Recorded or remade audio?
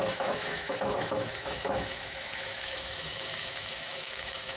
remade